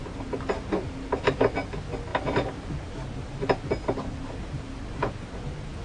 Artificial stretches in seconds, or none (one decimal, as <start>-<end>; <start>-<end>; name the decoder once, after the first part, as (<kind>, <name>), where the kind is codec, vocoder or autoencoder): none

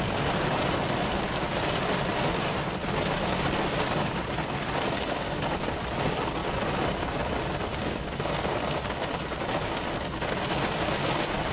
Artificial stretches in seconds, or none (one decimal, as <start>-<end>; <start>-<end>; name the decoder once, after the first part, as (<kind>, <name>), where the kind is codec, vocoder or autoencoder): none

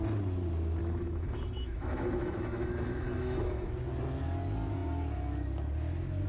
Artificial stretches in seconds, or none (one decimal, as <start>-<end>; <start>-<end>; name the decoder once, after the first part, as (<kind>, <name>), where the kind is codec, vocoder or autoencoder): 0.8-3.7 (autoencoder, DAC-VAE)

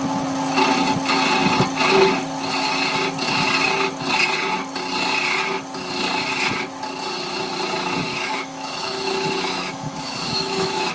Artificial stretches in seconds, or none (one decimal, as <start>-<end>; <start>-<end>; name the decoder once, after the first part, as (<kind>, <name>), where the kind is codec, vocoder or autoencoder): 8.1-10.9 (autoencoder, DAC-VAE)

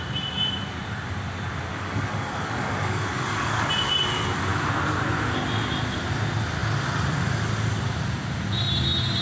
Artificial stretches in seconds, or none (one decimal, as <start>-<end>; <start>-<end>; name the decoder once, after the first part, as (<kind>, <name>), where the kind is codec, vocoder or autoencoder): 1.7-3.7 (codec, DAC)